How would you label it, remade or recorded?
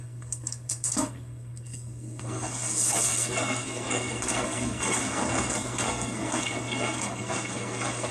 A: remade